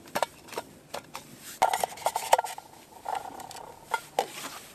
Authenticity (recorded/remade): recorded